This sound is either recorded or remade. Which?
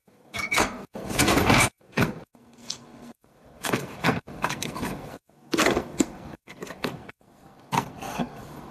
remade